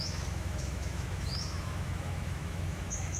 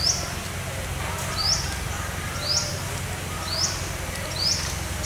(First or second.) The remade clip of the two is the first